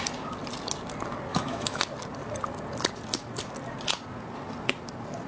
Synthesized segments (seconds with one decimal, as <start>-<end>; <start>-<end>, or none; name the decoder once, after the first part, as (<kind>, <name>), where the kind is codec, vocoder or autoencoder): 1.3-1.8 (autoencoder, DAC-VAE)